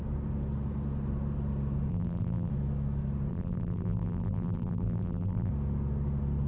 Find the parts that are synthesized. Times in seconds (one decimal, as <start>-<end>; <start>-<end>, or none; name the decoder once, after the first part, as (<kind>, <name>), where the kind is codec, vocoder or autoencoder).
1.9-2.5 (vocoder, BigVGAN v2); 3.3-5.5